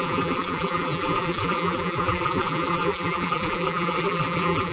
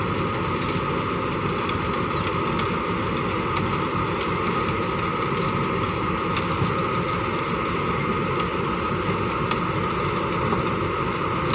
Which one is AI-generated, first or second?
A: first